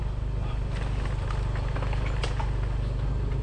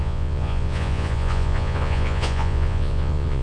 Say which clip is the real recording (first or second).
first